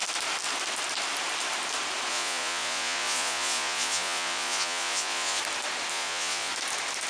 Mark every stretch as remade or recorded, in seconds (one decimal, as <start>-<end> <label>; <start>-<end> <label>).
0.0-2.1 recorded; 2.1-5.4 remade; 5.4-5.9 recorded; 5.9-6.5 remade; 6.5-7.1 recorded